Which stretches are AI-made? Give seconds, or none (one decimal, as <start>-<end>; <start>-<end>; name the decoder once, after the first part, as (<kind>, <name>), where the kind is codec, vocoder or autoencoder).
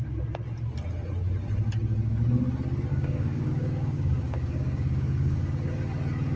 2.9-5.7 (codec, DAC)